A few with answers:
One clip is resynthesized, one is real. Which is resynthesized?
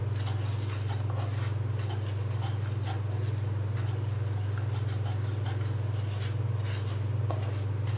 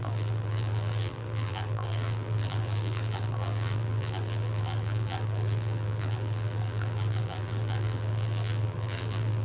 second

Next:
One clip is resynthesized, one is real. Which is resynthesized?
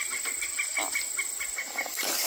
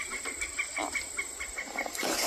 second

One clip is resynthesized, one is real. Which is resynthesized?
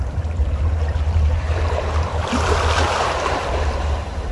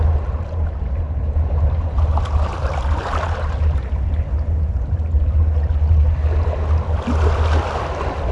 first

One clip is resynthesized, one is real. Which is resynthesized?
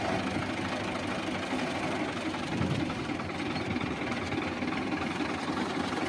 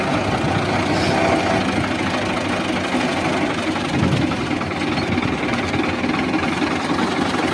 first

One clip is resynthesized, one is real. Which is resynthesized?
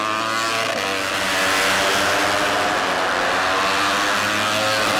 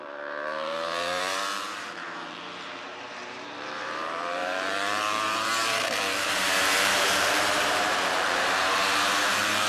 second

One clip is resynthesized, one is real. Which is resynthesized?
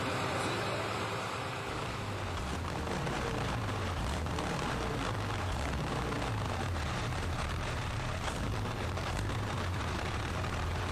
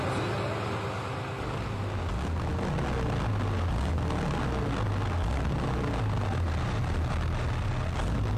first